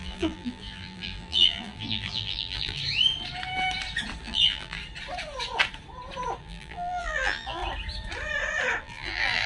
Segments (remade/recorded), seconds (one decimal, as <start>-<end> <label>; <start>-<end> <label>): 0.0-2.8 remade; 2.8-4.2 recorded; 4.2-4.8 remade; 4.8-6.4 recorded; 6.4-7.6 remade; 7.6-8.8 recorded; 8.8-9.5 remade